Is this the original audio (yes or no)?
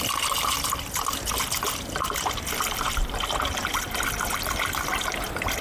yes